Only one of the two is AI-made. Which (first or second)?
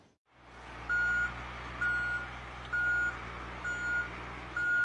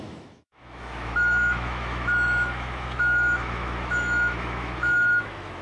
second